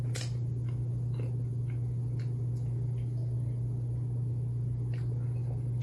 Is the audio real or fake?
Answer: real